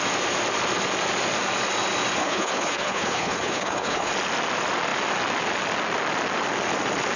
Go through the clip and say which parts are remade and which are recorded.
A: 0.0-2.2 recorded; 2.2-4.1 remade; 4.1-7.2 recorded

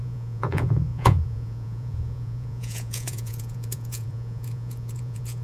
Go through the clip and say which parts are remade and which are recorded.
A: 0.0-5.4 remade

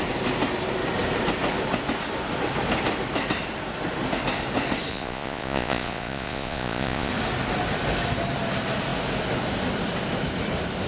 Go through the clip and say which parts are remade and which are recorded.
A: 0.0-4.9 recorded; 4.9-7.1 remade; 7.1-10.9 recorded

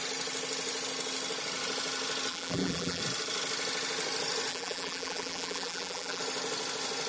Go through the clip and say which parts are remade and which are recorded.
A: 0.0-2.3 recorded; 2.3-3.0 remade; 3.0-4.5 recorded; 4.5-6.2 remade; 6.2-7.1 recorded